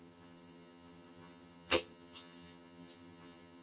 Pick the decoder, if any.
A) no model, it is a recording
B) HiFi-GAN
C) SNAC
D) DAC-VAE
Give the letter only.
B